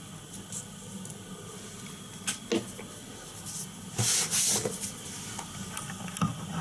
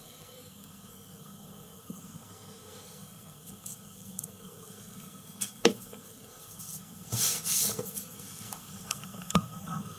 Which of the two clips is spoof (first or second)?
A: second